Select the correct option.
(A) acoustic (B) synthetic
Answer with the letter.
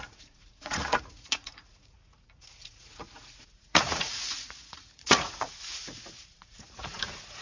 B